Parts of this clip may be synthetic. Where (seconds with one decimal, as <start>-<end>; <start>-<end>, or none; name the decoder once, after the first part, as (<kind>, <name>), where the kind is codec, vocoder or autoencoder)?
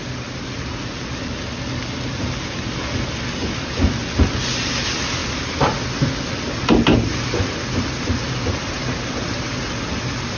none